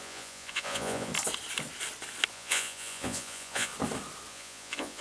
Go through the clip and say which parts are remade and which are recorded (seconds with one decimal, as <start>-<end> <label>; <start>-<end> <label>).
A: 0.0-1.1 remade; 1.1-2.3 recorded; 2.3-3.7 remade; 3.7-4.3 recorded; 4.3-5.0 remade